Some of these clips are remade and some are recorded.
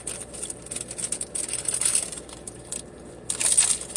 recorded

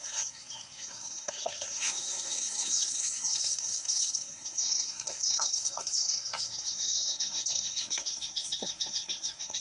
remade